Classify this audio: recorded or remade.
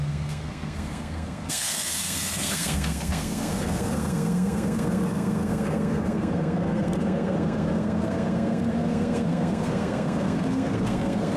remade